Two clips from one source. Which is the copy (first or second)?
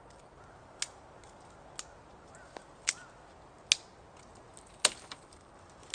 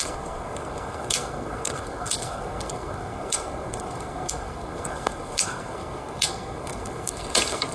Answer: second